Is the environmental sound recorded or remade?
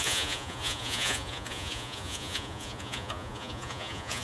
remade